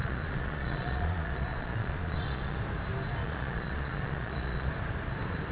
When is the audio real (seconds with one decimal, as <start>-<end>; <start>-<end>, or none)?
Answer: 2.6-3.2; 4.7-5.5